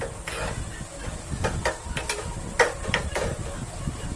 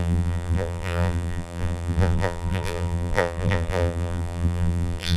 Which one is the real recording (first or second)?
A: first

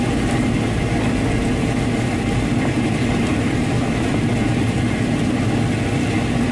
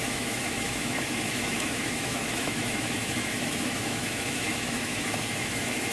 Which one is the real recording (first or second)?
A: first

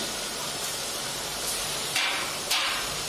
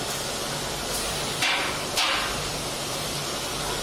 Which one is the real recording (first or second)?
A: second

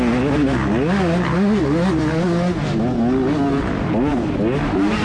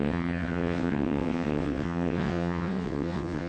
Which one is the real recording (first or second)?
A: first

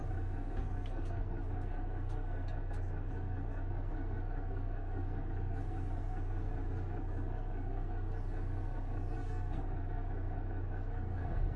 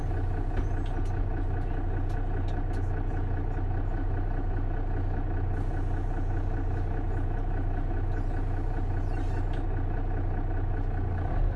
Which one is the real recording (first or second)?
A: second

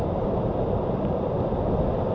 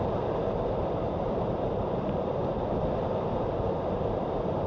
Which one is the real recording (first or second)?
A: first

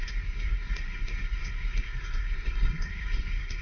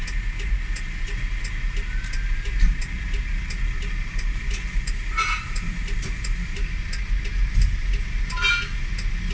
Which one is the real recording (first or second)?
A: second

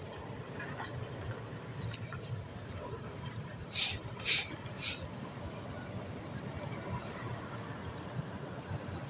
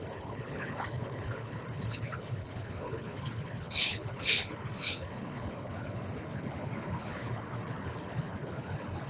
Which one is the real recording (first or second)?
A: first